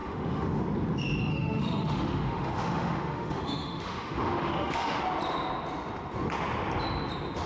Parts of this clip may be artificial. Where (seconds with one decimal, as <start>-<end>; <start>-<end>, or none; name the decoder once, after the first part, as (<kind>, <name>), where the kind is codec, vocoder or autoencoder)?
0.0-0.6 (autoencoder, DAC-VAE); 1.3-5.0